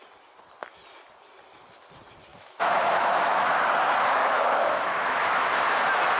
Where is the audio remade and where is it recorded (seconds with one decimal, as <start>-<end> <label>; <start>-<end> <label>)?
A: 0.0-2.3 recorded; 2.3-3.5 remade; 3.5-4.2 recorded; 4.2-5.6 remade; 5.6-6.2 recorded